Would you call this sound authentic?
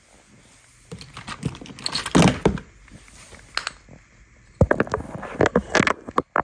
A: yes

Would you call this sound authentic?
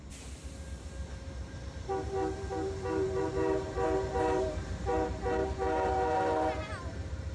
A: no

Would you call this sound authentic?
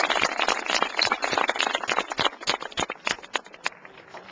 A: yes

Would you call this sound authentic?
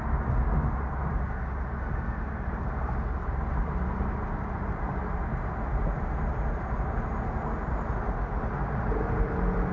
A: yes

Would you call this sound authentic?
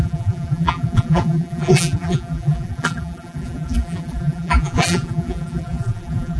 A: no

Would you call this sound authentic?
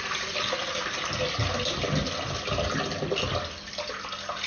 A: yes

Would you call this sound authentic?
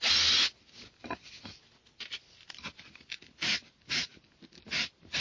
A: yes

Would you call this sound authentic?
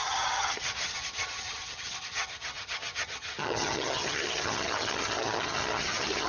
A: no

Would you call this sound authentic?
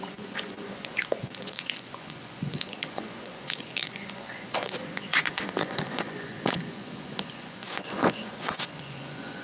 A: no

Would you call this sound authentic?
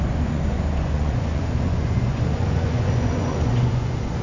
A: no